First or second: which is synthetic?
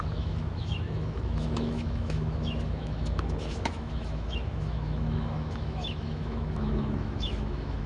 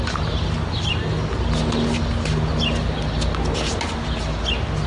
first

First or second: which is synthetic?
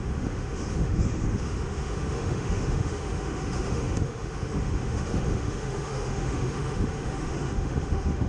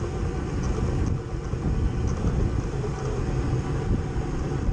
first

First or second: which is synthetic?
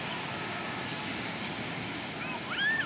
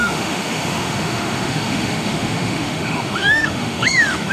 second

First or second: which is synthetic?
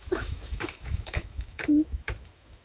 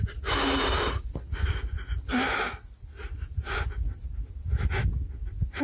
first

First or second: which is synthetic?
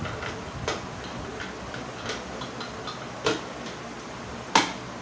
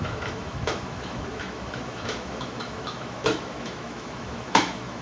second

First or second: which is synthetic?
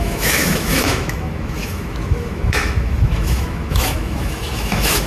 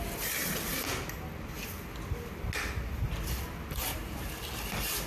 first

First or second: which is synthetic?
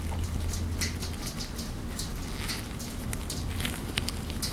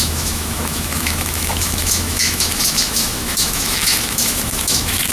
second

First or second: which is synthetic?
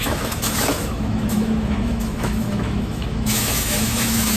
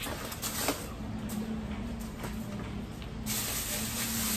first